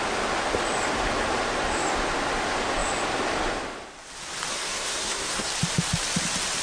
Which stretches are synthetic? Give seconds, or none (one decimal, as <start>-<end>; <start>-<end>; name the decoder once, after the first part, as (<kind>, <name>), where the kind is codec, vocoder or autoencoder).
4.5-5.5 (codec, SNAC)